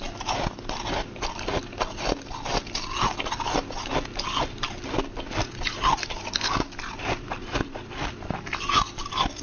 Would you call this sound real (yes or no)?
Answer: yes